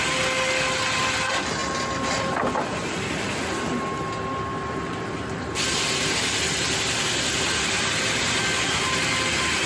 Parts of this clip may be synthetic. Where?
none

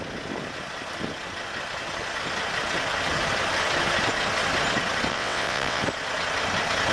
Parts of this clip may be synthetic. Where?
5.1-5.8 (vocoder, WaveNeXt)

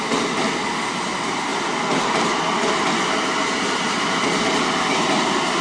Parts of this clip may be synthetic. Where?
none

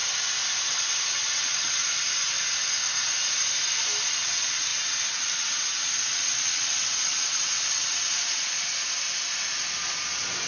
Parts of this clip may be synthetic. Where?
0.6-1.8 (vocoder, WaveNeXt); 4.1-8.8

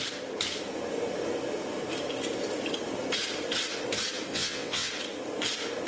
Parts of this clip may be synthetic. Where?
4.3-4.9 (vocoder, WaveNeXt)

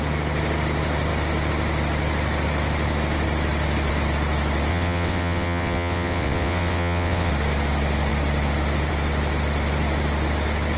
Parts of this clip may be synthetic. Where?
4.7-7.3 (vocoder, WaveNeXt)

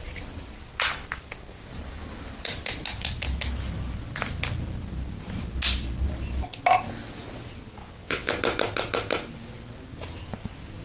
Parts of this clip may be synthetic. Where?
7.8-8.3 (vocoder, WaveNeXt)

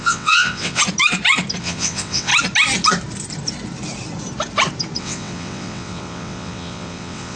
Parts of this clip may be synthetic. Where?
0.0-0.8 (vocoder, WaveNeXt); 1.6-2.3; 5.0-7.4